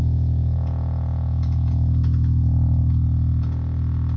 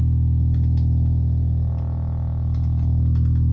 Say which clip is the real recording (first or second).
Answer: second